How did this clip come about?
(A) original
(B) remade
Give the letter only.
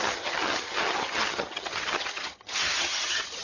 B